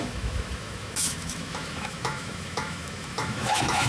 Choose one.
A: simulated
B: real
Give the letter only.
A